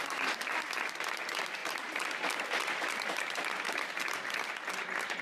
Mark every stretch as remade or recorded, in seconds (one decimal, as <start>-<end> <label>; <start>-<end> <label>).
0.0-5.2 recorded

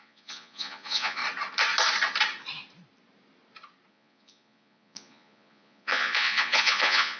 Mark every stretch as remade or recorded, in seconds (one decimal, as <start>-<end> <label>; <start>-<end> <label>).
0.0-1.2 remade; 1.2-3.9 recorded; 3.9-7.2 remade

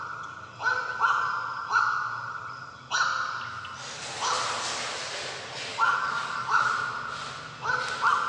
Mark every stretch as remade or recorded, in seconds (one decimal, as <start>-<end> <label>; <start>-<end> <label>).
0.0-5.7 recorded; 5.7-6.7 remade; 6.7-8.3 recorded